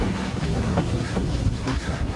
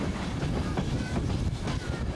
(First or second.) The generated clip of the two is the first